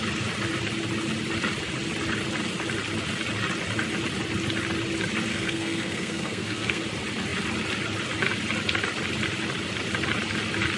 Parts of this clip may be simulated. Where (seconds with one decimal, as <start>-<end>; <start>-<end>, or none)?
5.3-6.8